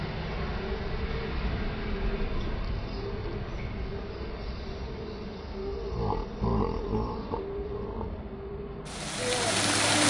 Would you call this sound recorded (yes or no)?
yes